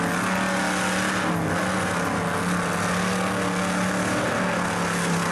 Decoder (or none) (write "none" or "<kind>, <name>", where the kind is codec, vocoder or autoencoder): none